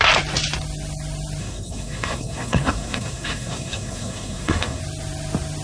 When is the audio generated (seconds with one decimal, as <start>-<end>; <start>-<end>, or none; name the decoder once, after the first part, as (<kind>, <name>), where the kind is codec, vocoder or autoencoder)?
1.4-4.8 (codec, SNAC)